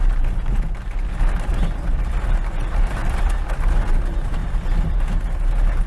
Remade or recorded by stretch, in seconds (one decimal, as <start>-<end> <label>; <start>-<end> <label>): 0.0-1.5 recorded; 1.5-2.1 remade; 2.1-3.0 recorded; 3.0-3.9 remade; 3.9-5.9 recorded